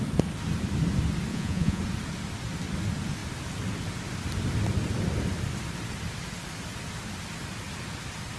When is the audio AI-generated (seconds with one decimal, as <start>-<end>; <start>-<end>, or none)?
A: 1.3-1.8